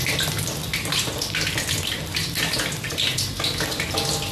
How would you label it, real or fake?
real